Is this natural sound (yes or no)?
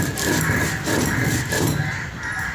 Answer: no